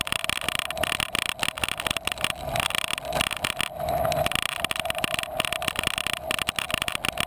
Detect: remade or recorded recorded